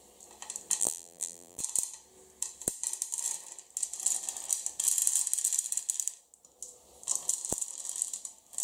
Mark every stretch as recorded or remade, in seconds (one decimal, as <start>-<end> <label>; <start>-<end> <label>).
0.0-0.8 recorded; 0.8-1.6 remade; 1.6-8.6 recorded